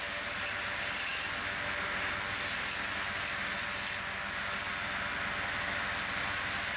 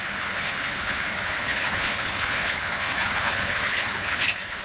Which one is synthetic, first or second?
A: second